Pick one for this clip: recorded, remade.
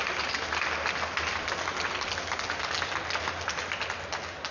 recorded